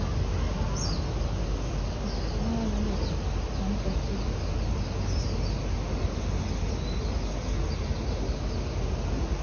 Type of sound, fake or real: real